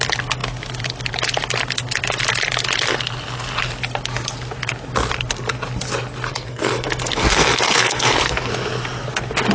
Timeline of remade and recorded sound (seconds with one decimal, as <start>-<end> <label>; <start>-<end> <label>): 0.0-6.3 recorded; 6.3-8.5 remade; 8.5-9.5 recorded